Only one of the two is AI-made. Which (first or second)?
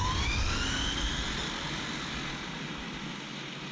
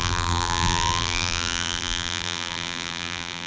second